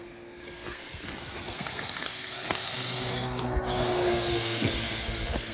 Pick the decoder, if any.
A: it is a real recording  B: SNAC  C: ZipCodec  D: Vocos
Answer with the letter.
B